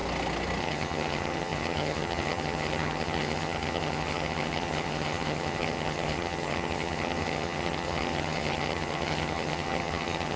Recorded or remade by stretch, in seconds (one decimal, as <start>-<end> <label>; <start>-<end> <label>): 0.0-0.6 recorded; 0.6-10.4 remade